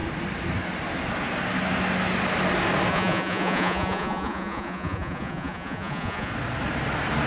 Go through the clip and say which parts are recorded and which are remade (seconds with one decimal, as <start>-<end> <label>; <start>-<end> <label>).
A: 0.0-2.9 recorded; 2.9-6.3 remade; 6.3-7.3 recorded